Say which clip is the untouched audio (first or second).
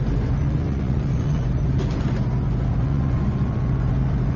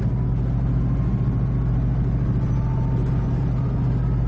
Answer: second